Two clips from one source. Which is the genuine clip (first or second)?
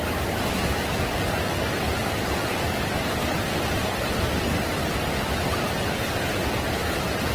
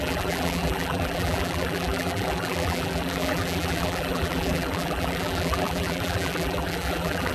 first